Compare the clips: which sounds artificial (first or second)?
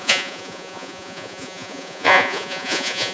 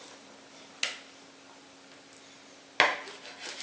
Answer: first